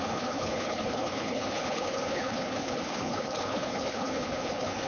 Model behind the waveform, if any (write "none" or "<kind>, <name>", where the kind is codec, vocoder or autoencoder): codec, HILCodec